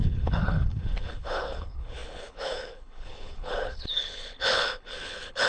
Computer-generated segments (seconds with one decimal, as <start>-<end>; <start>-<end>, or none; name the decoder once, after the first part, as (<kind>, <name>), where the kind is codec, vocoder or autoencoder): 0.0-5.5 (codec, HILCodec)